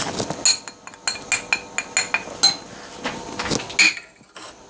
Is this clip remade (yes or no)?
no